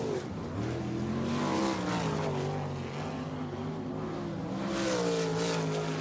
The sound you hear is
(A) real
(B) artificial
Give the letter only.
A